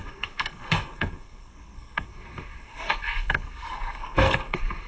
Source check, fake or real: fake